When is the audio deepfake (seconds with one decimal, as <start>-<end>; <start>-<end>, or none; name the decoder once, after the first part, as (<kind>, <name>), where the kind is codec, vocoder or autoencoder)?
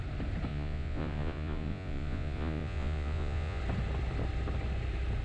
0.5-3.6 (vocoder, Vocos)